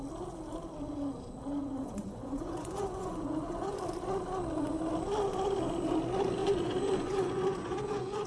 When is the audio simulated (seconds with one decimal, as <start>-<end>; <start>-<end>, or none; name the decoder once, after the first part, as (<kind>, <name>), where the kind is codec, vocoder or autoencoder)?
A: 1.5-3.8 (vocoder, Vocos); 6.4-8.3